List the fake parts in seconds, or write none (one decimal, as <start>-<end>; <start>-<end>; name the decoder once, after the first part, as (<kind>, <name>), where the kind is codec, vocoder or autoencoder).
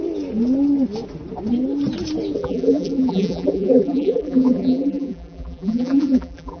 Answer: 2.4-6.6 (vocoder, BigVGAN v2)